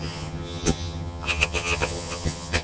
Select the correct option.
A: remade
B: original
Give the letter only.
A